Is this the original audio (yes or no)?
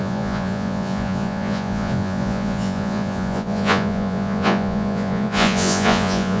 no